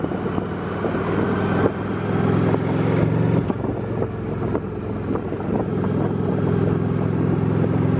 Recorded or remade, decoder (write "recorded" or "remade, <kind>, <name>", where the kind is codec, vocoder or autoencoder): recorded